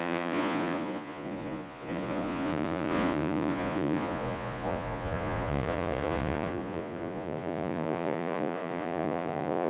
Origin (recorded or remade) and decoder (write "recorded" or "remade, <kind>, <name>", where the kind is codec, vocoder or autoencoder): remade, vocoder, Vocos